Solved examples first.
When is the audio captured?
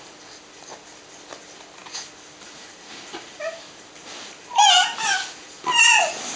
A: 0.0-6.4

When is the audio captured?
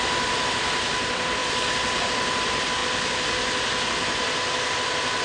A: 2.8-4.7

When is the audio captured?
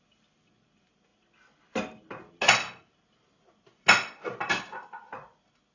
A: 0.0-5.7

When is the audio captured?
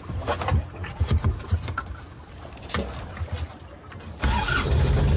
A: 0.0-0.8; 2.7-5.2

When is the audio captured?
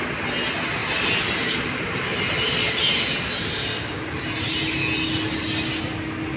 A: 0.0-0.8; 2.8-6.4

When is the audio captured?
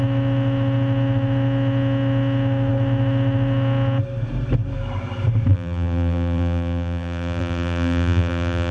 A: 0.0-5.5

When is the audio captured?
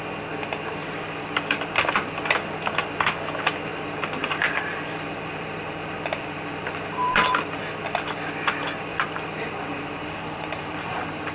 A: 0.0-0.8; 1.9-3.7; 7.6-8.9